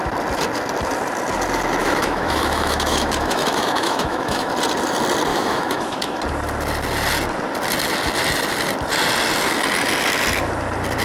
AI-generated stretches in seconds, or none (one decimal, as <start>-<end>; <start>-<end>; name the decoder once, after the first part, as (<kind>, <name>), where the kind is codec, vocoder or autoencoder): 1.8-4.5 (autoencoder, DAC-VAE); 5.3-6.2